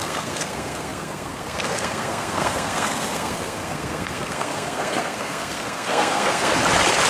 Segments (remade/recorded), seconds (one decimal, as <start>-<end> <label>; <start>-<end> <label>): 0.0-6.5 remade; 6.5-7.1 recorded